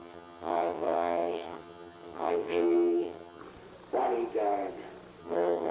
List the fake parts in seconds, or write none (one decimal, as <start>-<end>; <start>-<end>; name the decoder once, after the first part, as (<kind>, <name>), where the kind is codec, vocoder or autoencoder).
0.0-3.4 (vocoder, HiFi-GAN); 5.2-5.7